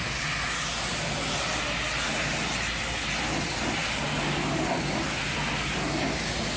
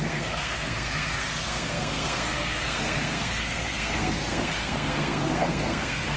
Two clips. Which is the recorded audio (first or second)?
first